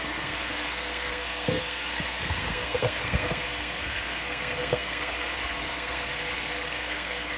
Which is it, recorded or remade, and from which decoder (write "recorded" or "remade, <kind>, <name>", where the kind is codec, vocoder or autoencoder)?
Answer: remade, codec, SNAC